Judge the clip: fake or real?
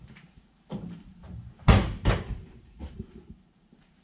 fake